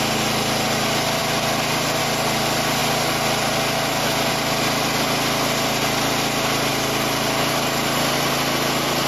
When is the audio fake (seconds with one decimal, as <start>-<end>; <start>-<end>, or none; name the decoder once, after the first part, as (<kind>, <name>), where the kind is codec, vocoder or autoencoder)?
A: none